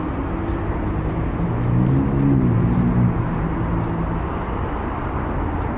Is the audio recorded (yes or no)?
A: yes